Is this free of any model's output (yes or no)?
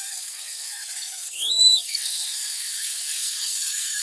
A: no